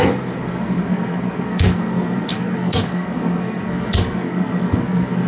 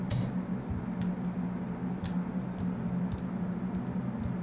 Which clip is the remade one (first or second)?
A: first